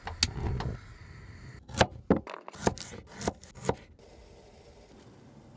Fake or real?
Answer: real